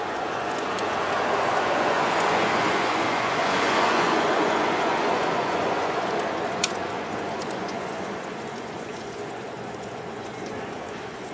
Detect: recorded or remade remade